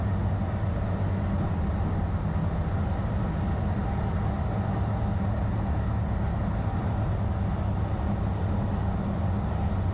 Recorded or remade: recorded